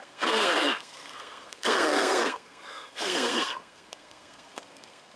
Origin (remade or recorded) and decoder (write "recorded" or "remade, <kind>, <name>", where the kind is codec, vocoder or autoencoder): remade, codec, SNAC